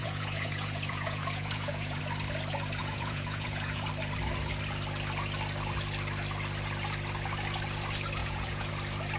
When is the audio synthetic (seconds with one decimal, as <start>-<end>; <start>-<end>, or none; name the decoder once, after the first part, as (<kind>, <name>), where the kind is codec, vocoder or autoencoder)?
0.0-2.0 (vocoder, Vocos); 2.8-3.9; 8.2-8.7